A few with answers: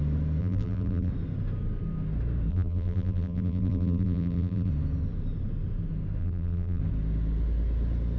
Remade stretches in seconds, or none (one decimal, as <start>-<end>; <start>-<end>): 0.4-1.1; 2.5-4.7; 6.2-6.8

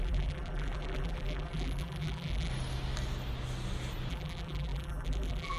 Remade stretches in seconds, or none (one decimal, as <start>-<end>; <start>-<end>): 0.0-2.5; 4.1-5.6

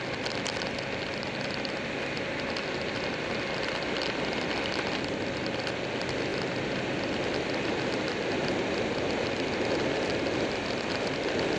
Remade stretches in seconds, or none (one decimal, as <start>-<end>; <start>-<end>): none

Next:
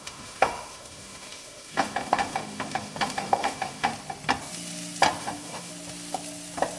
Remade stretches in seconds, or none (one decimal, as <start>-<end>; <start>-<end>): 0.0-3.9; 5.2-5.7

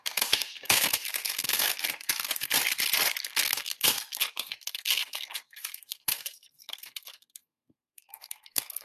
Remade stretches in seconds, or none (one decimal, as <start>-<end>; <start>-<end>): 0.0-2.5; 3.2-8.8